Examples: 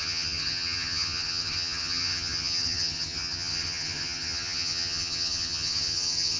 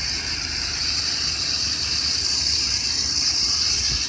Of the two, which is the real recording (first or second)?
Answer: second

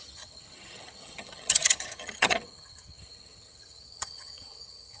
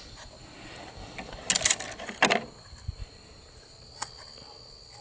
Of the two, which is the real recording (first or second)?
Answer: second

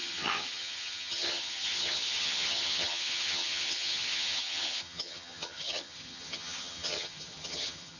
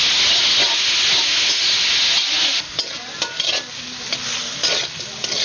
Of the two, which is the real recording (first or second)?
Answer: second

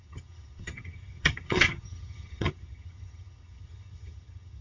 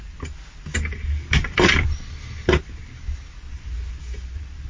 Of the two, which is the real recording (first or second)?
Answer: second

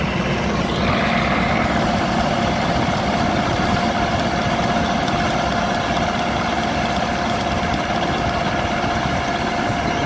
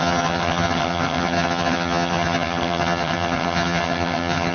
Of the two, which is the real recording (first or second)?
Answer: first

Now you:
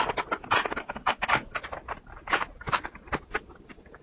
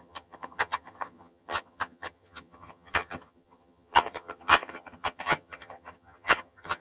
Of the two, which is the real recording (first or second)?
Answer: first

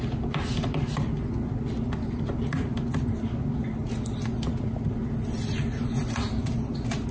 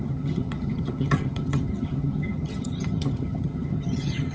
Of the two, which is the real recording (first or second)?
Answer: first